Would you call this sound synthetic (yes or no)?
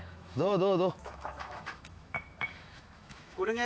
yes